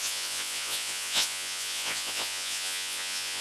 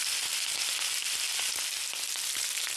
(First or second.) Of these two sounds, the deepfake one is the first